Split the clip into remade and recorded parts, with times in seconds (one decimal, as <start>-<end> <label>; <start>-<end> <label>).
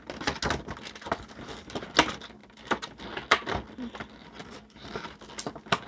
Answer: 0.0-2.4 recorded; 2.4-3.0 remade; 3.0-4.4 recorded; 4.4-5.2 remade; 5.2-5.9 recorded